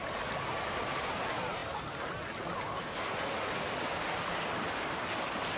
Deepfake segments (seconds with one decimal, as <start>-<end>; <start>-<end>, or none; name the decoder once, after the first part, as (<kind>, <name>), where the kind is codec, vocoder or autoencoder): none